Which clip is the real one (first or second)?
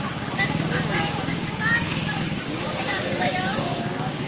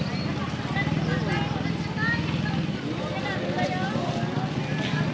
second